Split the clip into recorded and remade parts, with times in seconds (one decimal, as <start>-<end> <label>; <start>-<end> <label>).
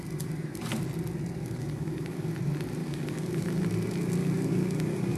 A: 0.0-1.4 recorded; 1.4-2.3 remade; 2.3-2.8 recorded; 2.8-3.4 remade; 3.4-4.2 recorded; 4.2-5.2 remade